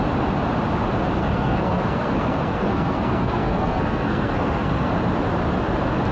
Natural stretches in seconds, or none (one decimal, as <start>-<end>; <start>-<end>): 0.0-1.2; 4.9-6.1